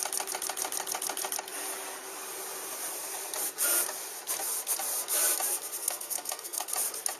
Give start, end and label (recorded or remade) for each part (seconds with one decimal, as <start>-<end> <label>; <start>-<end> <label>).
0.0-5.8 recorded; 5.8-6.7 remade; 6.7-7.2 recorded